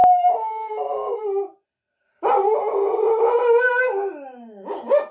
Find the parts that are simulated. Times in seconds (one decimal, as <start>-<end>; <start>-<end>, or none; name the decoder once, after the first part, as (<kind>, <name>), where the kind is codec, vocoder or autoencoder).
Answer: none